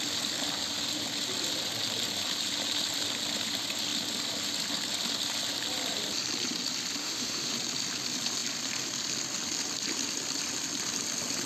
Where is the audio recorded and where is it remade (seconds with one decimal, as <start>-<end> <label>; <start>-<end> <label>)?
0.0-7.0 recorded; 7.0-7.5 remade; 7.5-11.5 recorded